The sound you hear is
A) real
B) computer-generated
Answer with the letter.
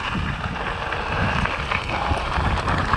A